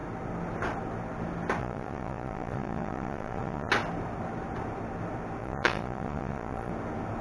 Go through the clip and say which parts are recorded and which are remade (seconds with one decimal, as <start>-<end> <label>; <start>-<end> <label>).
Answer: 0.0-1.6 recorded; 1.6-3.7 remade; 3.7-5.4 recorded; 5.4-6.7 remade; 6.7-7.2 recorded